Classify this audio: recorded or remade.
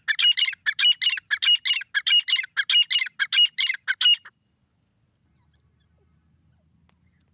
recorded